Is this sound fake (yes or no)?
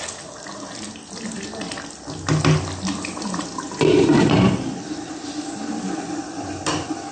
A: no